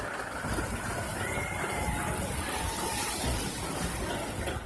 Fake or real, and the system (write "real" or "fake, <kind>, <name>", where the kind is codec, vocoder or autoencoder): real